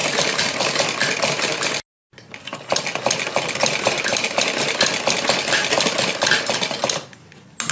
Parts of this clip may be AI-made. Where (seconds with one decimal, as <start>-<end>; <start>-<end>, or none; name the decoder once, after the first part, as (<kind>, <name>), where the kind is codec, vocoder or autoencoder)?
none